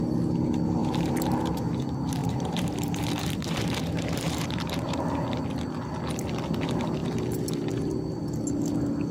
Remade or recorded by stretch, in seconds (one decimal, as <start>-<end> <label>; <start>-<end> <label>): 0.0-0.8 recorded; 0.8-1.6 remade; 1.6-2.2 recorded; 2.2-5.0 remade; 5.0-9.1 recorded